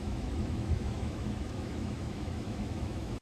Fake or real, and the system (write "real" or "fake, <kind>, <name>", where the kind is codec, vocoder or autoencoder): fake, autoencoder, DAC-VAE